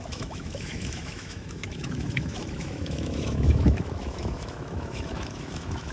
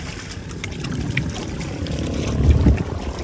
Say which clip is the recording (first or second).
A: second